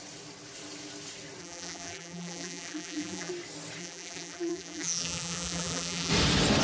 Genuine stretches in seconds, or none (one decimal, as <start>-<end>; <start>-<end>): 0.0-1.4; 3.3-3.8; 6.1-6.6